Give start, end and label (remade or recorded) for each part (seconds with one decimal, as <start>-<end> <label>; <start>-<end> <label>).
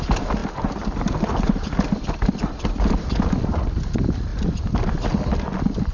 0.0-5.9 recorded